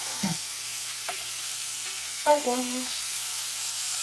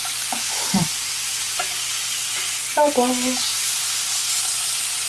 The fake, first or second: first